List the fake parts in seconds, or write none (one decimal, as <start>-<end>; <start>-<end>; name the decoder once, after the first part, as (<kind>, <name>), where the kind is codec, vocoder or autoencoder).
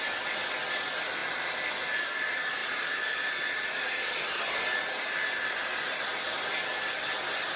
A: none